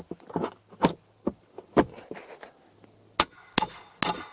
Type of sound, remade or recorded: recorded